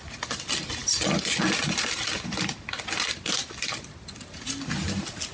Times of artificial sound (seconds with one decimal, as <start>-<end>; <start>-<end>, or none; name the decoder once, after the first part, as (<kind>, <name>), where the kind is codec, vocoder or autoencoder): none

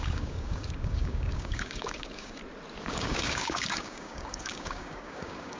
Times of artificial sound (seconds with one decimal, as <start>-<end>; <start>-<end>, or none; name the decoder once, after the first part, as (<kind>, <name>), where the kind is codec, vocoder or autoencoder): 0.0-2.4 (codec, DAC); 2.9-5.6

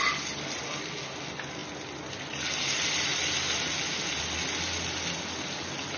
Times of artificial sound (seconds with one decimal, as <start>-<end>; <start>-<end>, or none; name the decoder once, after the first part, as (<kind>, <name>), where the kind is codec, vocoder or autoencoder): none

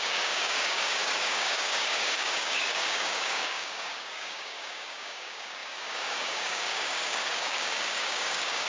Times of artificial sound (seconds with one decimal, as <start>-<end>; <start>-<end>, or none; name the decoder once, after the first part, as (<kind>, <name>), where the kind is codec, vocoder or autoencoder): 0.0-8.7 (codec, DAC)

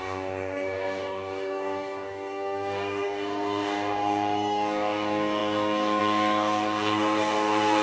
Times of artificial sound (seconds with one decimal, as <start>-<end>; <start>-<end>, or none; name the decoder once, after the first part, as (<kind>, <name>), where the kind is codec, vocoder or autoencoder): 0.0-7.8 (codec, DAC)

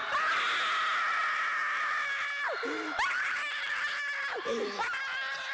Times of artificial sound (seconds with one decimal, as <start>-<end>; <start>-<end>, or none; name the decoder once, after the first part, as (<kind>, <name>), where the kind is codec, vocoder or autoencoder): none